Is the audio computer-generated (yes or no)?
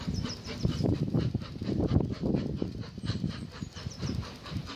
yes